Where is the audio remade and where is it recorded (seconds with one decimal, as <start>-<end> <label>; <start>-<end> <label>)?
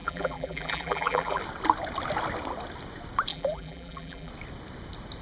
0.0-1.4 remade; 1.4-3.3 recorded; 3.3-4.3 remade; 4.3-5.2 recorded